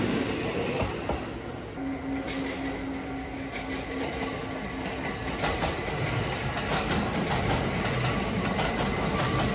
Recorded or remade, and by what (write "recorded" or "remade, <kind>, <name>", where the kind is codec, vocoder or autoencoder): recorded